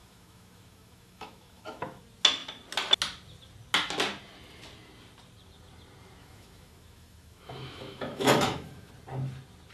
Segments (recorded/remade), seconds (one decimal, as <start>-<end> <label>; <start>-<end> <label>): 0.0-2.0 remade; 2.0-6.2 recorded; 6.2-8.9 remade; 8.9-9.7 recorded